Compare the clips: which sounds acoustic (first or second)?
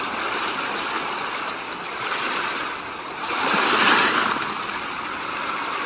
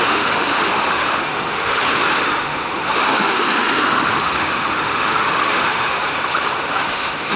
first